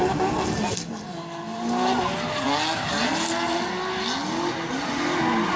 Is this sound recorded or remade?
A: recorded